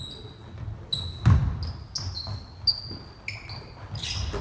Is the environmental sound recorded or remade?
recorded